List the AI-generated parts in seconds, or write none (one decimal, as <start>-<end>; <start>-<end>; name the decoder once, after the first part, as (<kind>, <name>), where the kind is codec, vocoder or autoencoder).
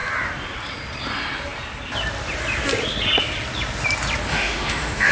4.3-5.1 (autoencoder, DAC-VAE)